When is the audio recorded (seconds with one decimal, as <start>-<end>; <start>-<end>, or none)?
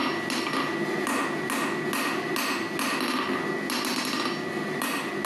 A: 0.0-5.3